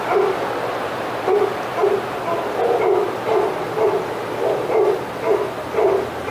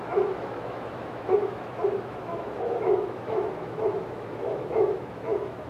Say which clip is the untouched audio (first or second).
first